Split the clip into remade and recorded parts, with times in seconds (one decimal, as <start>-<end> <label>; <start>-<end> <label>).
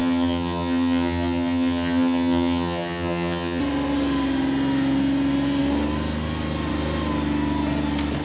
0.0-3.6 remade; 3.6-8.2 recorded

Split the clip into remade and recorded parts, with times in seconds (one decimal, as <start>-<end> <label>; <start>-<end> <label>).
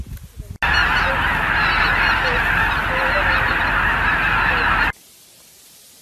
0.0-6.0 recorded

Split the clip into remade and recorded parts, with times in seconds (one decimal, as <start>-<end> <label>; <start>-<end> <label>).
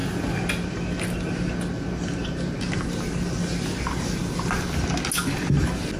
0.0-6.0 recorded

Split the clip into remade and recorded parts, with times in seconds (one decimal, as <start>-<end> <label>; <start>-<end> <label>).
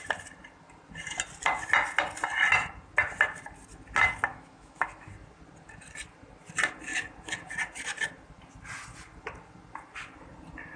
0.0-4.3 recorded; 4.3-5.1 remade; 5.1-10.8 recorded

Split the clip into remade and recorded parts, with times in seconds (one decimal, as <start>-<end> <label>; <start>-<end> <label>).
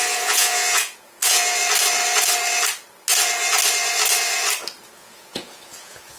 0.0-1.6 remade; 1.6-4.9 recorded; 4.9-6.2 remade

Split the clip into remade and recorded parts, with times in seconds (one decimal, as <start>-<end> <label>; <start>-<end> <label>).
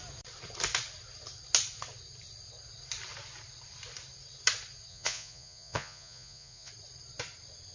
0.0-4.9 recorded; 4.9-6.7 remade; 6.7-7.7 recorded